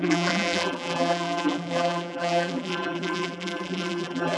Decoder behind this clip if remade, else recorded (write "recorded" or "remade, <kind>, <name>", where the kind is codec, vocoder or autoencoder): remade, vocoder, BigVGAN v2